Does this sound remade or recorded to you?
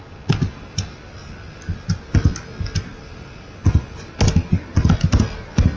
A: recorded